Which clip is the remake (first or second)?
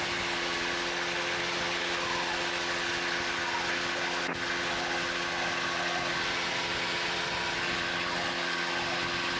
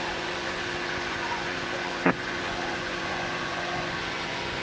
second